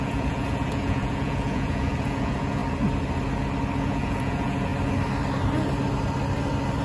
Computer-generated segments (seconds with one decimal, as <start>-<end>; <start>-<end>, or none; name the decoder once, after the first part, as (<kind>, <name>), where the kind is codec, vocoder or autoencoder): 0.0-2.6 (vocoder, Vocos); 3.8-4.7